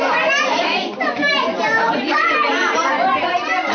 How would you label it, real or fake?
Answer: fake